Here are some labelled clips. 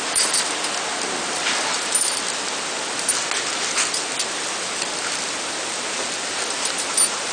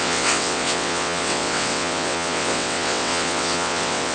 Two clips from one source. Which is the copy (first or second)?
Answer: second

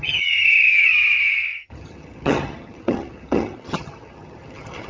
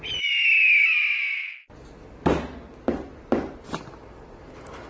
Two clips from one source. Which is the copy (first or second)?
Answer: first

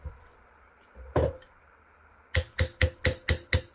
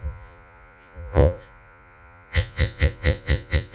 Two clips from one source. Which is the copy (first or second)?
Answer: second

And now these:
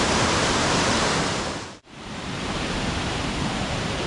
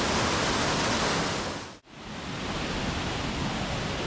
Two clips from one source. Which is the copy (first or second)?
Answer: first